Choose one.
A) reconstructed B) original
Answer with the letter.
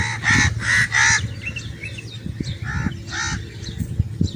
B